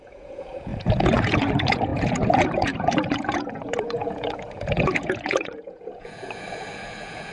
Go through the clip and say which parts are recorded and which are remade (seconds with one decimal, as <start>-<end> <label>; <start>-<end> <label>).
0.0-7.3 remade